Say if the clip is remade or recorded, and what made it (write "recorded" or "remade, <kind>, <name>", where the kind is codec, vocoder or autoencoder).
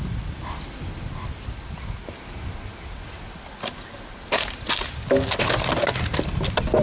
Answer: recorded